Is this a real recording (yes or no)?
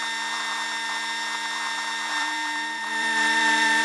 no